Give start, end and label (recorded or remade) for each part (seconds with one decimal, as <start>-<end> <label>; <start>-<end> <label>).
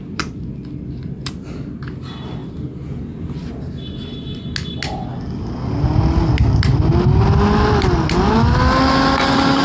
0.0-9.6 recorded